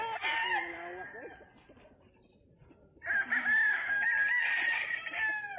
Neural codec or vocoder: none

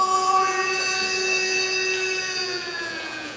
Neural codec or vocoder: vocoder, Vocos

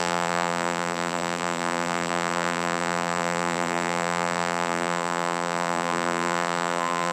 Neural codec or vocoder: vocoder, BigVGAN v2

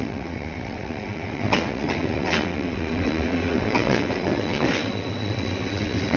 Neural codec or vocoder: vocoder, WaveNeXt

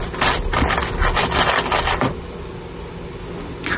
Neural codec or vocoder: none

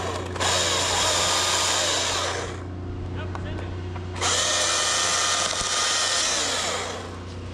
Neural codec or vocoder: none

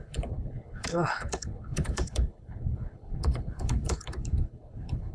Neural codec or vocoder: codec, HILCodec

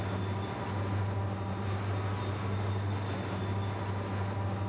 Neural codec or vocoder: none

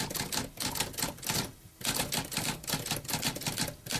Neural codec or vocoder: none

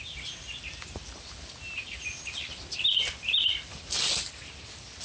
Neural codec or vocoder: none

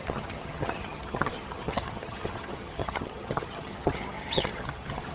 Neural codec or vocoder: vocoder, HiFi-GAN